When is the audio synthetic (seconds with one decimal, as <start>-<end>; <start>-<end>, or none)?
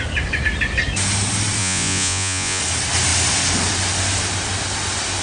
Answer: 1.6-2.6